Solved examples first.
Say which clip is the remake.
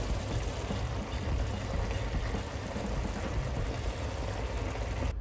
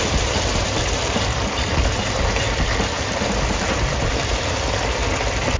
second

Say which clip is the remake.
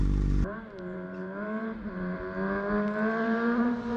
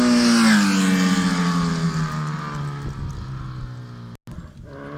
first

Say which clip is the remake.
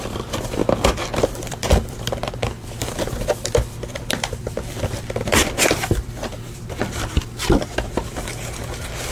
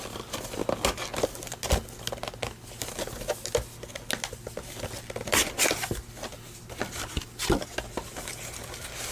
first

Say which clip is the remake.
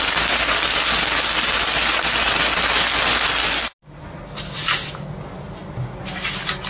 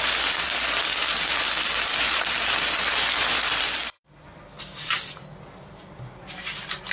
second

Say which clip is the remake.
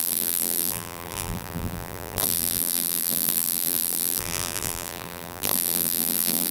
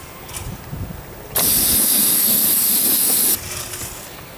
first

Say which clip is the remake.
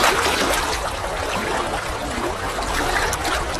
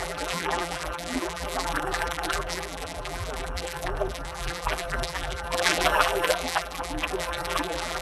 second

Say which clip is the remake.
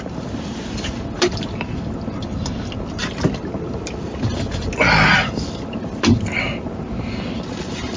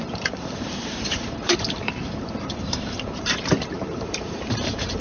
second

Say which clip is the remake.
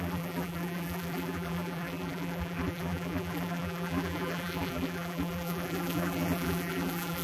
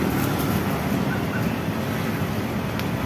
first